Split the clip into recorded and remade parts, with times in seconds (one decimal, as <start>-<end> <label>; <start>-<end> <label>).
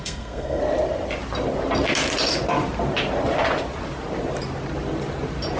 0.0-0.6 remade; 0.6-5.6 recorded